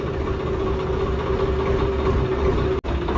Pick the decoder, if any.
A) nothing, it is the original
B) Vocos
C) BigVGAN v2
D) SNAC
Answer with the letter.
A